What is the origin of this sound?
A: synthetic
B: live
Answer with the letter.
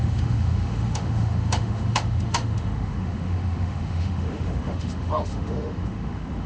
A